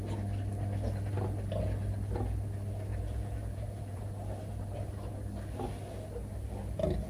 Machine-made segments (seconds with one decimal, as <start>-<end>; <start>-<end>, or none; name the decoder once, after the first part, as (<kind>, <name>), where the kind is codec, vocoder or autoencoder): 2.9-4.0 (vocoder, Vocos)

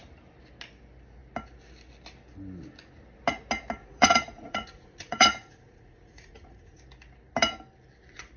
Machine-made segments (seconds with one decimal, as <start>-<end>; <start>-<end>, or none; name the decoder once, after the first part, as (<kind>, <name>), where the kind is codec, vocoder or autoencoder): 3.8-6.8 (vocoder, Vocos)